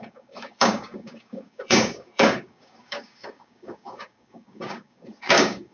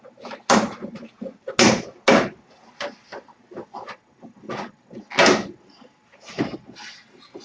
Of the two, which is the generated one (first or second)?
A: first